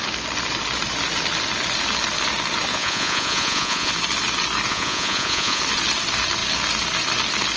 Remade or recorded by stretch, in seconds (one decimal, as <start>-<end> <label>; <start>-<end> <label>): 0.0-2.7 recorded; 2.7-3.9 remade; 3.9-4.7 recorded; 4.7-5.6 remade; 5.6-7.6 recorded